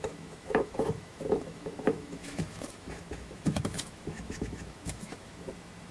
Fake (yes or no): yes